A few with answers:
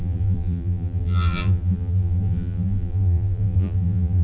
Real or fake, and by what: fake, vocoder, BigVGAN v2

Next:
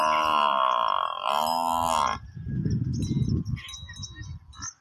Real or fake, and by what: real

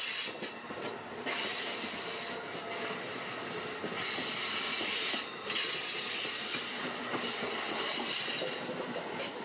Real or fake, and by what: real